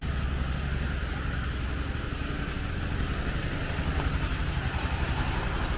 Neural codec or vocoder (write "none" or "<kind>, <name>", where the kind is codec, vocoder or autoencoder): none